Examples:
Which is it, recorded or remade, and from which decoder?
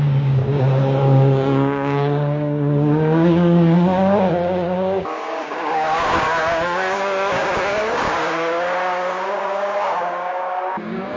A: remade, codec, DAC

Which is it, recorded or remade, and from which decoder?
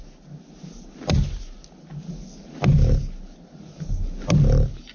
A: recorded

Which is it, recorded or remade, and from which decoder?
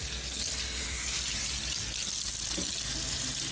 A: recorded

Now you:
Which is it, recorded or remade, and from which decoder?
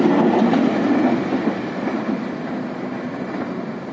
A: recorded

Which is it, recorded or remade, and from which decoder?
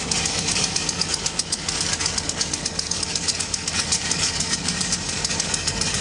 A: remade, codec, DAC